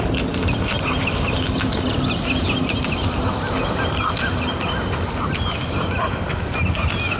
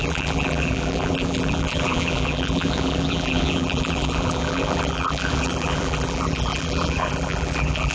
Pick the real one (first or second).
first